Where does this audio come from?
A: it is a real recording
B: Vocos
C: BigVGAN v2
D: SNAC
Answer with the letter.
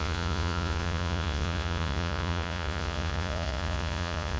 B